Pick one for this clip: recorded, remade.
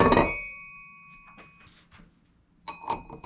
recorded